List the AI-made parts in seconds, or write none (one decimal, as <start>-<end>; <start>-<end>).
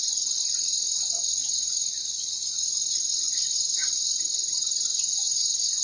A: none